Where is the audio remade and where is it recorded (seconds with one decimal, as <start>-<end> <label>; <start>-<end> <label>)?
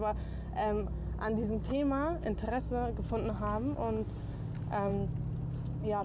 0.0-6.0 recorded